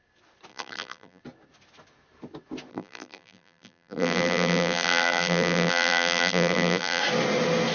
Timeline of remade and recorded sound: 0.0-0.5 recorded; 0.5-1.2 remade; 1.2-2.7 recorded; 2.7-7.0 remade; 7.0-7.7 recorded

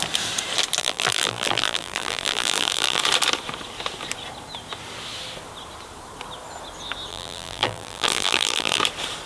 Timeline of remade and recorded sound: 0.0-0.8 recorded; 0.8-3.0 remade; 3.0-7.1 recorded; 7.1-8.8 remade; 8.8-9.3 recorded